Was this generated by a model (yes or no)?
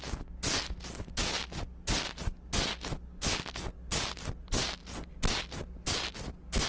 no